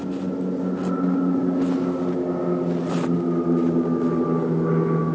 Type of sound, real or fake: real